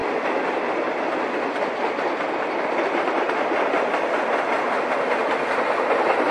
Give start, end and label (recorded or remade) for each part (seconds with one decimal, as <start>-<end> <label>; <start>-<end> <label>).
0.0-6.3 recorded